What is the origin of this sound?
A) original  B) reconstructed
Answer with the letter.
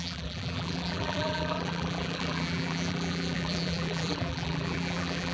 B